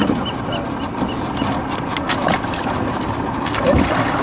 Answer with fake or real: real